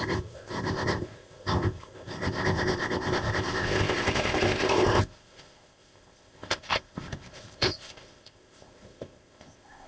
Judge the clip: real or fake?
fake